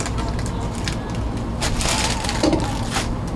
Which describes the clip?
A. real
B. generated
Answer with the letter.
A